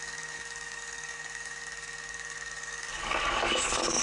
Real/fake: fake